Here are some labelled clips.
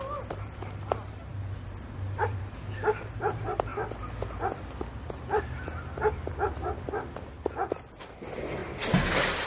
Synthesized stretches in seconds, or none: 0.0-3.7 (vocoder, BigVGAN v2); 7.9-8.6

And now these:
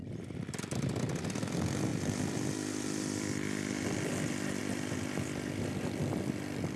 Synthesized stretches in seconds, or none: 1.9-4.1 (vocoder, BigVGAN v2); 4.6-5.7

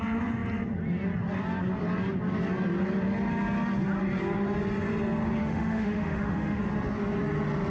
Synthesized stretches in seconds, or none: 5.4-6.6 (autoencoder, DAC-VAE)

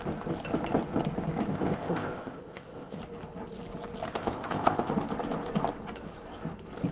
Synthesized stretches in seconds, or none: 1.5-3.0 (codec, ZipCodec); 4.1-4.9

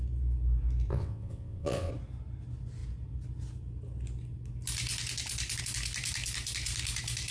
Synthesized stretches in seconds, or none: 0.9-1.9 (vocoder, WaveNeXt)